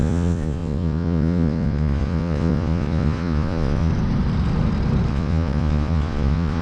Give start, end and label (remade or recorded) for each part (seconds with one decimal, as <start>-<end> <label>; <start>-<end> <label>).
0.0-3.9 remade; 3.9-5.1 recorded; 5.1-6.6 remade